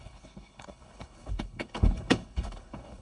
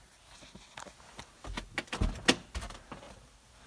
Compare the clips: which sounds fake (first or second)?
first